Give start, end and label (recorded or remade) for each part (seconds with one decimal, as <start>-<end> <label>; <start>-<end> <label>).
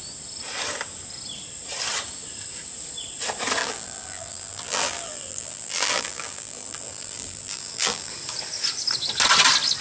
0.0-3.6 recorded; 3.6-8.1 remade; 8.1-9.8 recorded